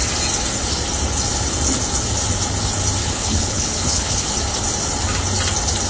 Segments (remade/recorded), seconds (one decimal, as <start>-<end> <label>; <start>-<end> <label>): 0.0-3.0 recorded; 3.0-4.3 remade; 4.3-5.9 recorded